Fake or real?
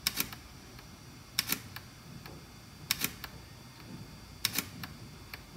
real